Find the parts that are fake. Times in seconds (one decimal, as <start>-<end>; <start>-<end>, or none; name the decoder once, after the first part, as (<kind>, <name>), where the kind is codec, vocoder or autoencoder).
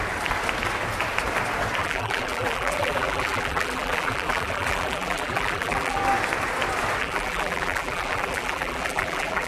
1.8-6.0 (vocoder, BigVGAN v2); 7.0-9.5